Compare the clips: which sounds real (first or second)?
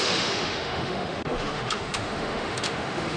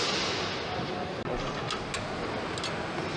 second